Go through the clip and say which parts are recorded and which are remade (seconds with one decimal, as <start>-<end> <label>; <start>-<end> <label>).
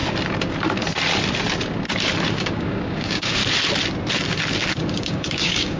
0.0-2.3 recorded; 2.3-3.4 remade; 3.4-4.8 recorded; 4.8-5.8 remade